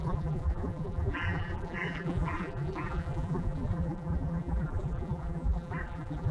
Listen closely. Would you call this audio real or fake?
fake